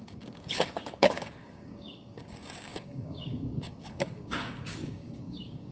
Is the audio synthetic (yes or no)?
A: yes